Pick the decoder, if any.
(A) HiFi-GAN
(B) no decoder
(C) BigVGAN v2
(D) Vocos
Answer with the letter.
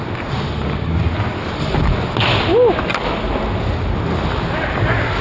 B